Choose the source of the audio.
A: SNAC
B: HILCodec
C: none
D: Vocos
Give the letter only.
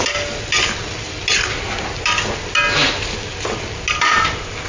C